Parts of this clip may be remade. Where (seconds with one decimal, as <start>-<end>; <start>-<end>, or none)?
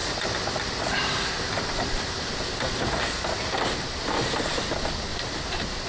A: 0.0-2.2